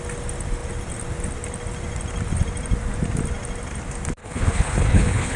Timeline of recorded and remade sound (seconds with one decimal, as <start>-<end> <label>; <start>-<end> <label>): 0.0-4.2 recorded; 4.2-5.4 remade